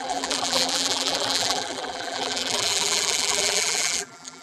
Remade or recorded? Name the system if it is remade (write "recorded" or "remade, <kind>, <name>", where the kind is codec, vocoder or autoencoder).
remade, vocoder, BigVGAN v2